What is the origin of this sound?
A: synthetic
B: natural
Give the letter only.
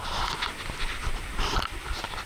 B